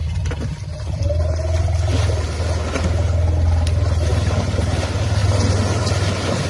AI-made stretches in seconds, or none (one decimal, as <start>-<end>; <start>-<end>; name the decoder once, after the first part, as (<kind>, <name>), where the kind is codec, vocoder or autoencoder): 4.1-4.6 (vocoder, BigVGAN v2)